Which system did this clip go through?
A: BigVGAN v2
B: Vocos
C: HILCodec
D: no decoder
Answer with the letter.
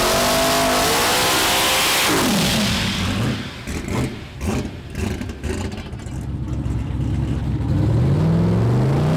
D